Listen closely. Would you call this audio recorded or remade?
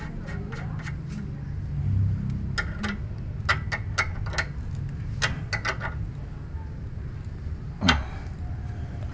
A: recorded